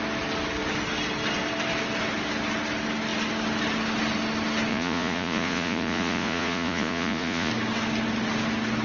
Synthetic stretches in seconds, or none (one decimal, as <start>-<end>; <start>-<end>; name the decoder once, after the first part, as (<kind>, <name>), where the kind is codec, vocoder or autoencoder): 4.7-7.5 (vocoder, Vocos)